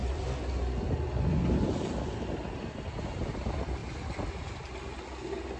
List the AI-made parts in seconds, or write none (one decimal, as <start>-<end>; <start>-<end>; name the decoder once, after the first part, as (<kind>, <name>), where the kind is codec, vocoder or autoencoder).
none